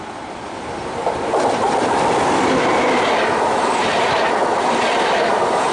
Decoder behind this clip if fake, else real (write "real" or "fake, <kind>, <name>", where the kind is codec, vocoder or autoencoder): real